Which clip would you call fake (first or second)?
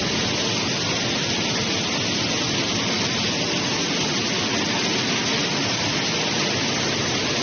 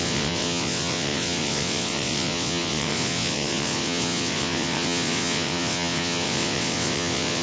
second